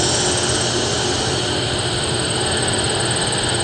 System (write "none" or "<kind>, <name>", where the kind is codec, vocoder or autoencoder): none